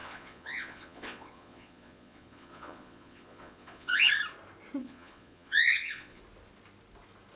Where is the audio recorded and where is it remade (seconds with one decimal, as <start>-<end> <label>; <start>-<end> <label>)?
0.0-4.1 remade; 4.1-4.8 recorded; 4.8-6.2 remade; 6.2-7.4 recorded